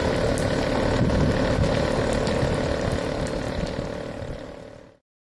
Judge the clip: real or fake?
real